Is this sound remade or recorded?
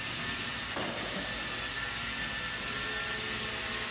recorded